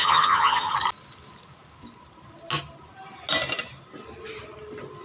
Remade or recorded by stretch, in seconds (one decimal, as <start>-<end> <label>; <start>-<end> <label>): 0.0-0.7 remade; 0.7-5.0 recorded